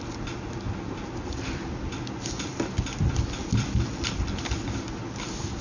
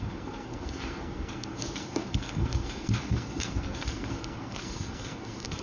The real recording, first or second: first